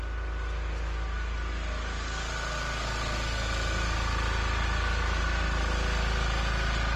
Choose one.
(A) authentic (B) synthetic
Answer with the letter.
A